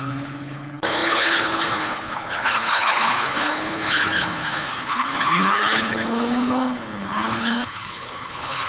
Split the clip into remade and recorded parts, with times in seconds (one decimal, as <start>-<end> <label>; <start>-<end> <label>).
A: 0.0-8.7 remade